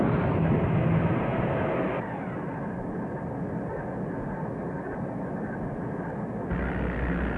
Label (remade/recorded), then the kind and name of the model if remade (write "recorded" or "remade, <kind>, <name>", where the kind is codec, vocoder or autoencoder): recorded